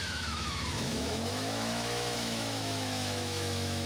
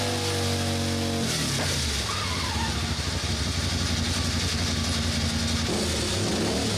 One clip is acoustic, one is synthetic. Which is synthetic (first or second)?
first